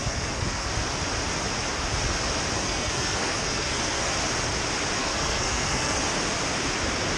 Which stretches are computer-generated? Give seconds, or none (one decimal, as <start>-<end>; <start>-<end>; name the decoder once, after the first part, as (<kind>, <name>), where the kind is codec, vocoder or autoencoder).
0.0-0.7 (codec, SNAC); 2.6-4.1; 5.0-6.0